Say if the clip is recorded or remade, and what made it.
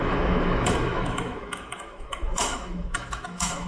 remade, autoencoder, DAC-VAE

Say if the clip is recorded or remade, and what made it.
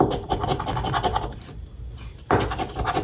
recorded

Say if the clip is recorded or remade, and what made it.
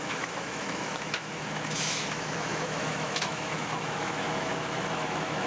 remade, autoencoder, DAC-VAE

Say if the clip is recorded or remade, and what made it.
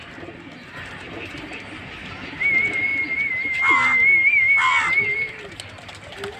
recorded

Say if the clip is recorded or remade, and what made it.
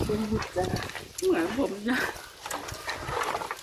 recorded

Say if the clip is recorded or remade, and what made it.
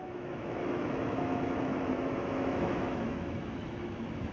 remade, autoencoder, DAC-VAE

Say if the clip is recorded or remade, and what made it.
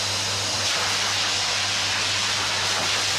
recorded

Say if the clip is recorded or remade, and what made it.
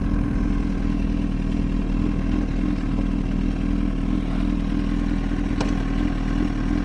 recorded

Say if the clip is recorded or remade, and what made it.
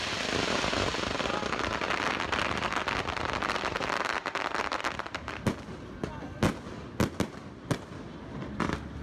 recorded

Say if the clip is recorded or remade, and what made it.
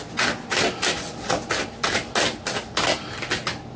recorded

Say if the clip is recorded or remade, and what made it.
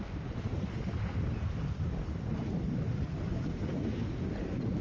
recorded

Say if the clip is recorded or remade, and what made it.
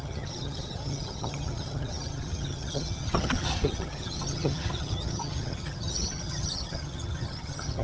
remade, vocoder, HiFi-GAN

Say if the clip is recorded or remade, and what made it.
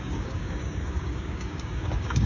remade, codec, DAC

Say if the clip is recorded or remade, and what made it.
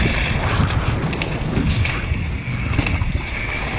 recorded